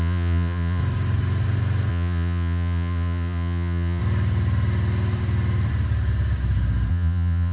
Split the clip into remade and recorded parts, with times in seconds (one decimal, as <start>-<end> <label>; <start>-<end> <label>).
0.0-0.8 remade; 0.8-1.9 recorded; 1.9-4.0 remade; 4.0-6.9 recorded; 6.9-7.5 remade